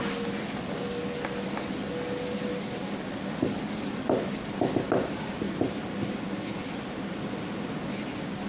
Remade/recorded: recorded